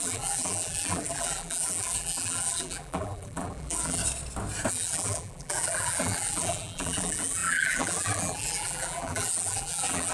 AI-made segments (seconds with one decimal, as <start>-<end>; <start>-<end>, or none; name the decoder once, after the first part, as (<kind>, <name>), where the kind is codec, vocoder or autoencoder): 0.0-4.0 (vocoder, BigVGAN v2); 4.7-10.1